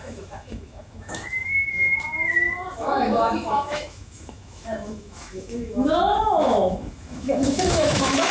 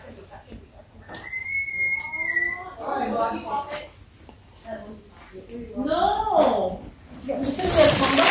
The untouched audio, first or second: second